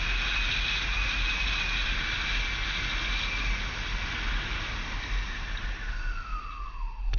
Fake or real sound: real